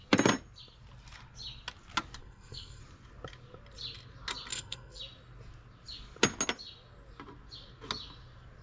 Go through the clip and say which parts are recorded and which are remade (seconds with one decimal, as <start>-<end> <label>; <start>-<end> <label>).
0.0-2.2 recorded; 2.2-2.8 remade; 2.8-4.5 recorded; 4.5-5.0 remade; 5.0-8.6 recorded